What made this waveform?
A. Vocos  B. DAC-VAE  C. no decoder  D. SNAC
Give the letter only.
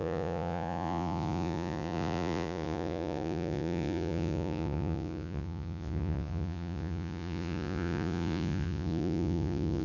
A